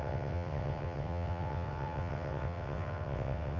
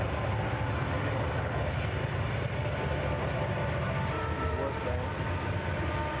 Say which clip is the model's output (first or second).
first